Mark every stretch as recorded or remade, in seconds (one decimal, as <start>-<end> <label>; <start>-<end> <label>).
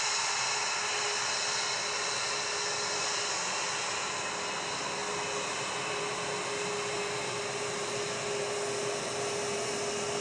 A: 0.0-10.2 recorded